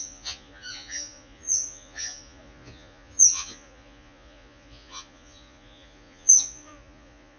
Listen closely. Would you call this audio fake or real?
fake